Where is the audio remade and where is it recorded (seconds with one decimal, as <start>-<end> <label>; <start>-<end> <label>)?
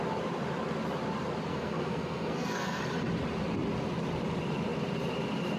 0.0-1.5 recorded; 1.5-2.8 remade; 2.8-5.6 recorded